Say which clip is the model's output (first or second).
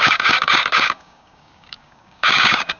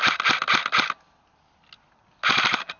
first